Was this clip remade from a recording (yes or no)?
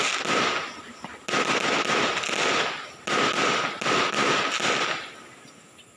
no